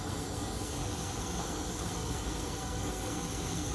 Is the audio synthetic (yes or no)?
yes